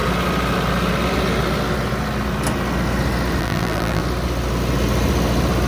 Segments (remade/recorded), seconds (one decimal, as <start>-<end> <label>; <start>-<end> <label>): 0.0-3.4 recorded; 3.4-4.0 remade; 4.0-5.7 recorded